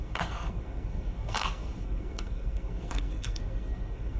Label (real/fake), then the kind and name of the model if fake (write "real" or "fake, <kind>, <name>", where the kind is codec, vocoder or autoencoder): fake, codec, SNAC